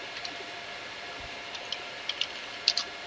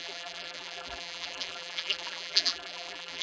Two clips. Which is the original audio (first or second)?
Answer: first